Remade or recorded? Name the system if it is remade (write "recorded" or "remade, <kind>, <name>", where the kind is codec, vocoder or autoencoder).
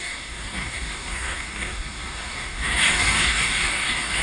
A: remade, codec, DAC